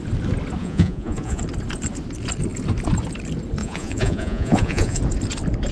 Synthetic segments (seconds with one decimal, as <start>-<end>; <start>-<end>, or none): 0.6-1.4; 3.6-5.0

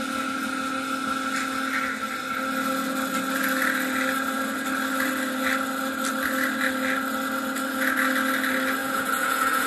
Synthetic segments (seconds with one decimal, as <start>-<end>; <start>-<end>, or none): 8.8-9.7

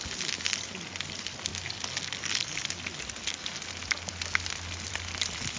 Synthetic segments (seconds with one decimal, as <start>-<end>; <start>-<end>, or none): none

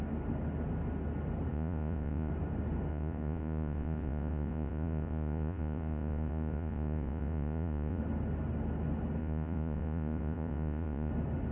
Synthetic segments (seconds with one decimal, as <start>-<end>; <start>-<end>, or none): 1.5-2.3; 2.9-8.0; 9.2-11.1

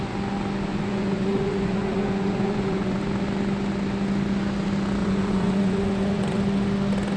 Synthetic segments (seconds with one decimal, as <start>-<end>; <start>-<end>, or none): 0.7-3.0; 5.0-6.4

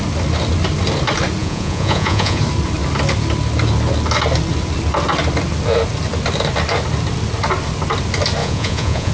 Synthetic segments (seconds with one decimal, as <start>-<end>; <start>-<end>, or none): 1.4-2.4; 8.4-9.1